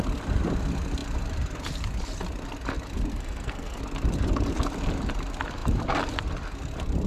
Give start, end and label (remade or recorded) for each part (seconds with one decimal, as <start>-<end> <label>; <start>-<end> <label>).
0.0-3.1 recorded; 3.1-3.8 remade; 3.8-7.1 recorded